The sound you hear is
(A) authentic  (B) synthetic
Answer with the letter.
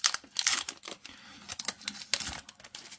A